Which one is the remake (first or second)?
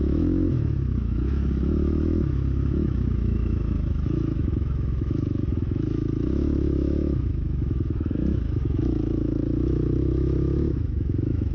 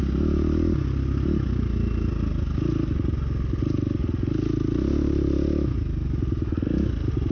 first